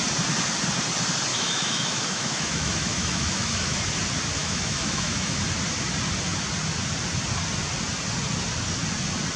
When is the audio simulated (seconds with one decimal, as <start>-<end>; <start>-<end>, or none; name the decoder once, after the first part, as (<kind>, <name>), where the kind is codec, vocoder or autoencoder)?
1.3-3.8 (autoencoder, DAC-VAE); 4.4-5.4